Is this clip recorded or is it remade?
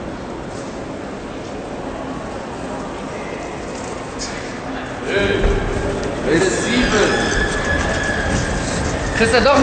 recorded